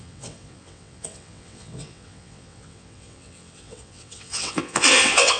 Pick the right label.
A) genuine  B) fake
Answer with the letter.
B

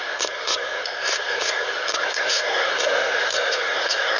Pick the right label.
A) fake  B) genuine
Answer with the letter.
A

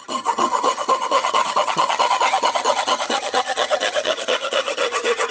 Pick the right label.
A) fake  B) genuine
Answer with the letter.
A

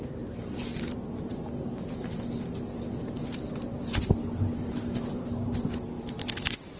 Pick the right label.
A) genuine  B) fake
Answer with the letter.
A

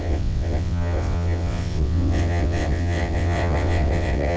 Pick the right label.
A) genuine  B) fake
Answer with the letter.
B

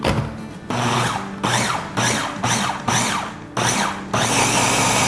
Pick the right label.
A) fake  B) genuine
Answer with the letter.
B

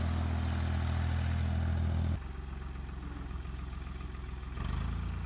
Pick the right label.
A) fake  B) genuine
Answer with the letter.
B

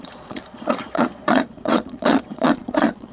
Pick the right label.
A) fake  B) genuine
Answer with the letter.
A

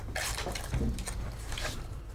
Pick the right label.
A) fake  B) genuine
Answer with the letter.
B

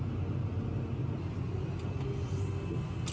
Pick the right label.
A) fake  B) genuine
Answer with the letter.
B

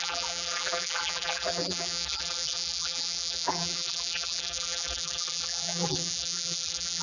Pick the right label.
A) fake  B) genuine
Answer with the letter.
A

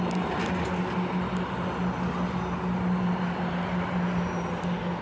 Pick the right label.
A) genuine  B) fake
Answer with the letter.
A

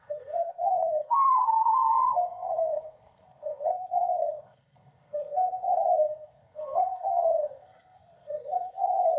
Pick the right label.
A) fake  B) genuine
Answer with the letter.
A